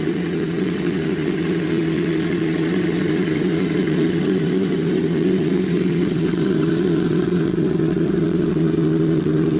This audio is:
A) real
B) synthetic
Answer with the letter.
B